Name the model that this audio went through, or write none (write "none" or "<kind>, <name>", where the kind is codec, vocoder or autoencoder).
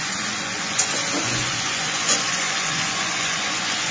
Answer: vocoder, Vocos